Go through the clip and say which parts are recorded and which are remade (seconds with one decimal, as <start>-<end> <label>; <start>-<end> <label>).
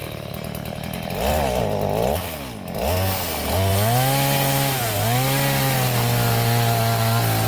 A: 0.0-7.5 recorded